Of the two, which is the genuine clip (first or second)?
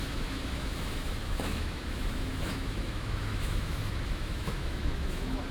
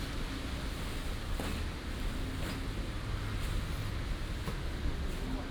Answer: second